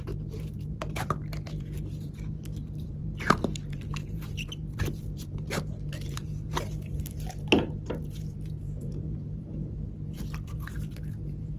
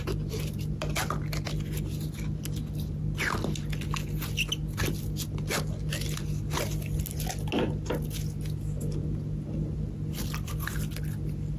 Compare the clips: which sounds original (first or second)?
second